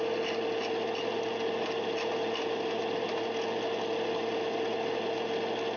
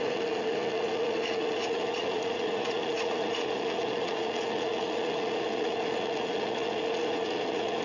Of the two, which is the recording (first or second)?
first